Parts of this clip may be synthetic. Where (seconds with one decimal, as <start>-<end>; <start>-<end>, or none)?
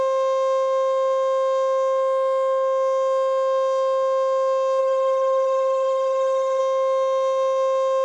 4.8-6.6